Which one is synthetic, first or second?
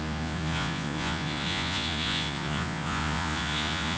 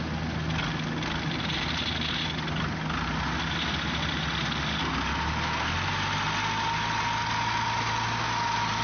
first